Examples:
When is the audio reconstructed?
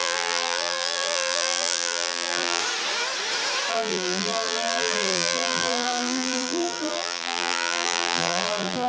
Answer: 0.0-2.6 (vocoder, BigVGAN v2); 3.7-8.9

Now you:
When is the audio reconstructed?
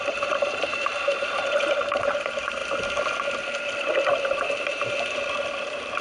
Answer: 0.0-2.6 (vocoder, BigVGAN v2); 4.7-6.0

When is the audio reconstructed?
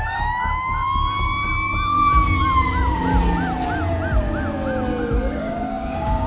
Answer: 0.0-1.5 (codec, DAC); 5.3-6.3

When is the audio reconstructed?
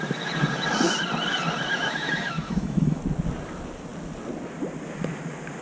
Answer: 1.7-3.0 (autoencoder, DAC-VAE)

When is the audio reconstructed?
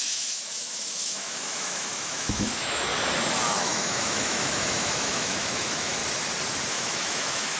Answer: 0.0-2.9 (autoencoder, DAC-VAE); 3.6-6.0; 6.7-7.6